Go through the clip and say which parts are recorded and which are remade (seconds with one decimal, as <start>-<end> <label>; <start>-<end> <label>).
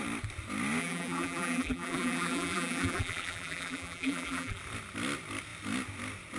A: 0.0-0.8 recorded; 0.8-4.6 remade; 4.6-6.4 recorded